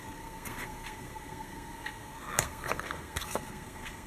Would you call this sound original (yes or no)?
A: no